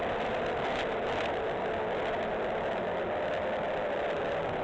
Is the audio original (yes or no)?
yes